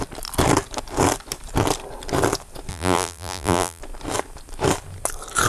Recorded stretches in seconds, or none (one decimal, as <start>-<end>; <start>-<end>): 0.0-2.7; 3.8-5.5